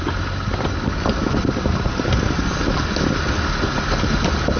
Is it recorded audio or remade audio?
recorded